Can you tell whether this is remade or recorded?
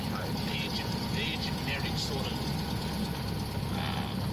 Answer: recorded